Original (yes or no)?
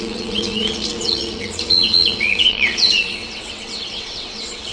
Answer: no